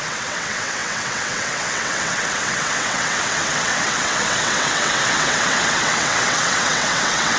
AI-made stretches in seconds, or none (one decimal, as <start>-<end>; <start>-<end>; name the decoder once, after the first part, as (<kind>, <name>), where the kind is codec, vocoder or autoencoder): 0.0-7.4 (vocoder, WaveNeXt)